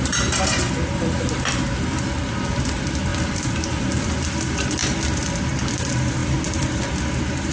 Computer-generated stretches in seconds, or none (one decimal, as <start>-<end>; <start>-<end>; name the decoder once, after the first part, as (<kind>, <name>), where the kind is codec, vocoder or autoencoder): none